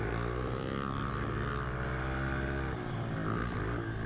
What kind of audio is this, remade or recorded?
recorded